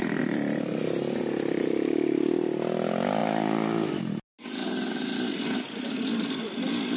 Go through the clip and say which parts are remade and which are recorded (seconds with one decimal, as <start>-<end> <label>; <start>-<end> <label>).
0.0-3.2 recorded; 3.2-3.9 remade; 3.9-7.0 recorded